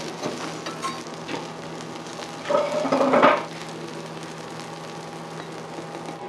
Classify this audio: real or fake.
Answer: real